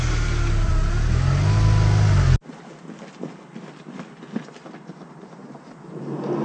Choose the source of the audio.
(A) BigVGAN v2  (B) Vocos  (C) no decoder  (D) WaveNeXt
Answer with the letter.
C